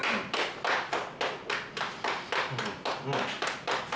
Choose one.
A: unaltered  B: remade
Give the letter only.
A